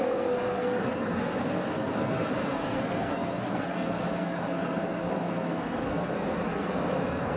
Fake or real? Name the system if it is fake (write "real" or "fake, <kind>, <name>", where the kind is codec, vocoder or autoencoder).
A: fake, codec, SNAC